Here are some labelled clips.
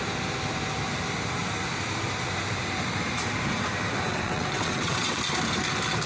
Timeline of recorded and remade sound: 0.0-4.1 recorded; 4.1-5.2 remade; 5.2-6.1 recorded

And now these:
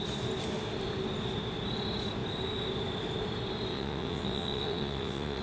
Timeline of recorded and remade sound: 0.0-3.7 recorded; 3.7-5.4 remade

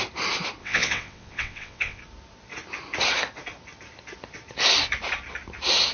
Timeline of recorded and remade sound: 0.0-0.6 recorded; 0.6-2.0 remade; 2.0-5.9 recorded

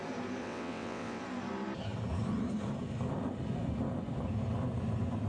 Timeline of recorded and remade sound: 0.0-0.4 recorded; 0.4-1.2 remade; 1.2-5.3 recorded

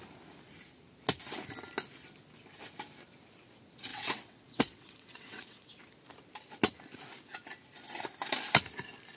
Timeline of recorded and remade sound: 0.0-3.9 recorded; 3.9-5.7 remade; 5.7-9.2 recorded

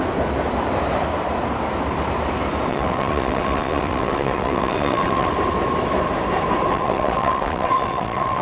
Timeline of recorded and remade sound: 0.0-2.7 recorded; 2.7-5.3 remade; 5.3-6.7 recorded; 6.7-8.4 remade

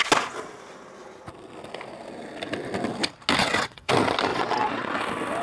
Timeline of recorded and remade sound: 0.0-3.4 recorded; 3.4-3.9 remade; 3.9-4.3 recorded; 4.3-5.0 remade; 5.0-5.4 recorded

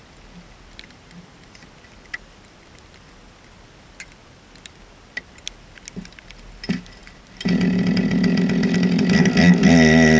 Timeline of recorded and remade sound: 0.0-10.2 recorded